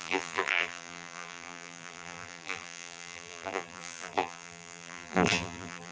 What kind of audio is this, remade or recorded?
remade